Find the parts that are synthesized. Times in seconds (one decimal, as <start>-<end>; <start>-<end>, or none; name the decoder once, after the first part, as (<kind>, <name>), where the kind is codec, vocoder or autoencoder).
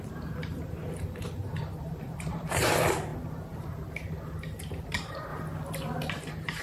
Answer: 0.0-3.1 (vocoder, BigVGAN v2); 4.6-5.3; 6.1-6.6